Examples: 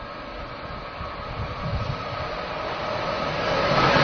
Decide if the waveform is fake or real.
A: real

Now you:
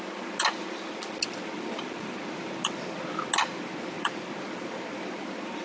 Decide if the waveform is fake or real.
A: real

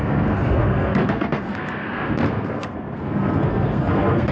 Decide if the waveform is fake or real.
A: fake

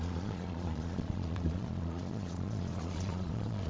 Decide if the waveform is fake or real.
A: fake